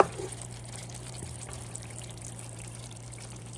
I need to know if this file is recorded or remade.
remade